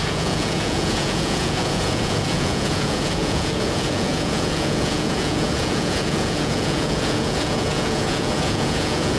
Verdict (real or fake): fake